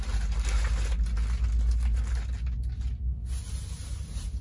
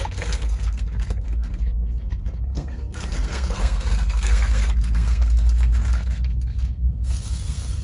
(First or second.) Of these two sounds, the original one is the first